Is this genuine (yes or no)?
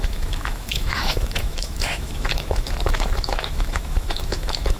no